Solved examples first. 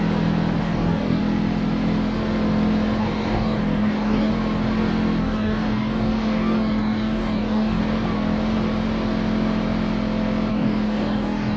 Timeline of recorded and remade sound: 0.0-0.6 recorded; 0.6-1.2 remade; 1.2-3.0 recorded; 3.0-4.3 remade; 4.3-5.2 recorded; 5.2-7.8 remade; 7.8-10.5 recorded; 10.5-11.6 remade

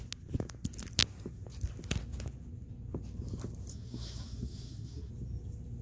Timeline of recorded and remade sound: 0.0-3.7 recorded; 3.7-5.1 remade; 5.1-5.8 recorded

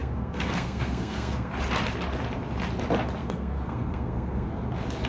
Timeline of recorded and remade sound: 0.0-1.5 remade; 1.5-3.2 recorded; 3.2-4.5 remade; 4.5-5.1 recorded